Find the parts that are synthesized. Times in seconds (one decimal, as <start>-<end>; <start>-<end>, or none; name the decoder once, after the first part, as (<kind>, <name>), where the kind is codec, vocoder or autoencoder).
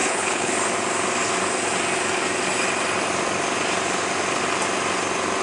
0.0-0.5 (codec, HILCodec)